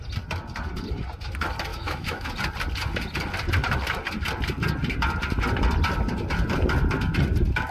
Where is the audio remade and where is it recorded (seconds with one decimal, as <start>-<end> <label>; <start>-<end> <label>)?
0.0-1.7 recorded; 1.7-2.3 remade; 2.3-7.7 recorded